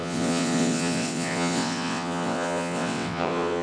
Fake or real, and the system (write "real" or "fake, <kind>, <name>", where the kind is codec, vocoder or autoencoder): fake, vocoder, WaveNeXt